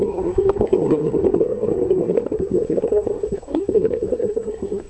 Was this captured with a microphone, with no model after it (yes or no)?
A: no